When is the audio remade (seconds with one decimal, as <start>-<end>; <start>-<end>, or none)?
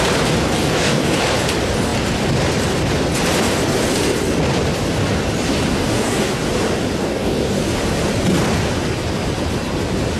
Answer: 0.6-1.2; 5.7-6.4; 7.0-7.6